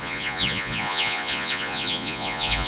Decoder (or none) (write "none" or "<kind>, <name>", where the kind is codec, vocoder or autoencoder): vocoder, Vocos